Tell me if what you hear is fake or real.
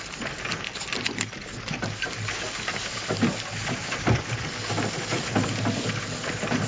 real